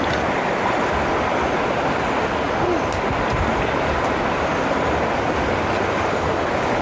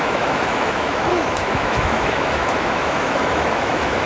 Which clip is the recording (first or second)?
first